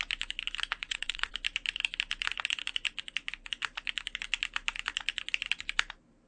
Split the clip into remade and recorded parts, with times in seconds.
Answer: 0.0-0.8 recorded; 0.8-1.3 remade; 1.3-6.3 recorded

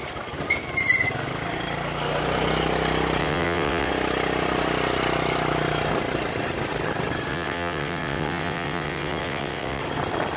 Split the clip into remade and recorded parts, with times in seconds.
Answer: 0.0-3.2 recorded; 3.2-3.9 remade; 3.9-7.3 recorded; 7.3-9.8 remade; 9.8-10.4 recorded

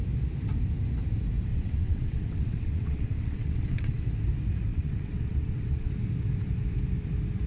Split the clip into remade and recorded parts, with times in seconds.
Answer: 0.0-1.5 recorded; 1.5-4.1 remade; 4.1-4.7 recorded; 4.7-5.9 remade; 5.9-7.5 recorded

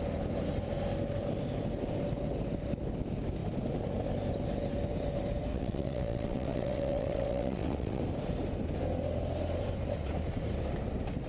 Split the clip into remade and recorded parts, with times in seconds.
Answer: 0.0-5.5 recorded; 5.5-8.0 remade; 8.0-11.3 recorded

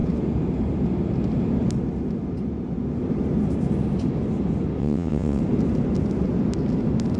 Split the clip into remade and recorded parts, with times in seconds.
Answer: 0.0-4.8 recorded; 4.8-5.4 remade; 5.4-7.2 recorded